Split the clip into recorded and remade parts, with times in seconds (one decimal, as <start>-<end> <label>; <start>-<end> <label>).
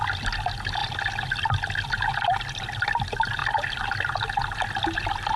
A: 0.0-5.4 recorded